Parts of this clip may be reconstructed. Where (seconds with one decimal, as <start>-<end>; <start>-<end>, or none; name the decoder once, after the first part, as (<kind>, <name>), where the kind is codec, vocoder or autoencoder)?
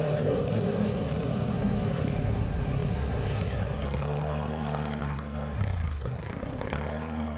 0.0-7.4 (codec, SNAC)